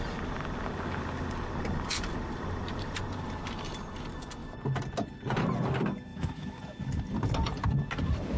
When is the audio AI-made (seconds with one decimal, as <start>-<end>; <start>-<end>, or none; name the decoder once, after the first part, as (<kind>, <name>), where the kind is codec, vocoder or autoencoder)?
6.1-6.6 (autoencoder, DAC-VAE)